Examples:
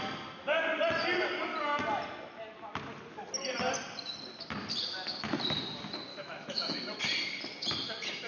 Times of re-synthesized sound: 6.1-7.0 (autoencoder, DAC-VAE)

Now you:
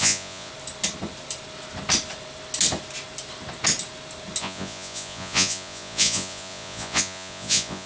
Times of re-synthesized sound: 0.0-0.5 (vocoder, Vocos); 4.4-7.9

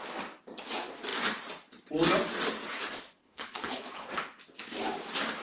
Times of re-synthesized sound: 3.2-4.1 (codec, HILCodec)

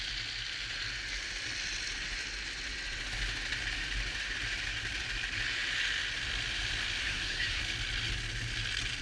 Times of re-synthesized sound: 7.0-7.6 (codec, SNAC)

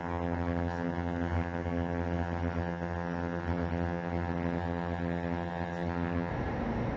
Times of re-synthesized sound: 0.0-6.3 (vocoder, HiFi-GAN)

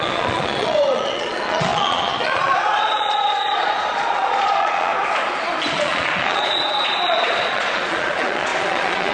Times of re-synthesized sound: 0.0-4.9 (vocoder, Vocos); 5.7-9.1